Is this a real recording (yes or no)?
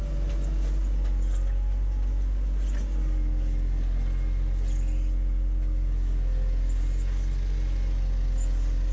yes